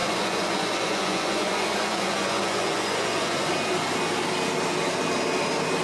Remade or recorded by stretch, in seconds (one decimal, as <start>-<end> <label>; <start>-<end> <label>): 0.0-3.5 remade; 3.5-5.8 recorded